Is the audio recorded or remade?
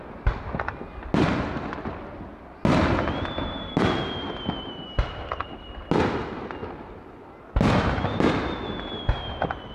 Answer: recorded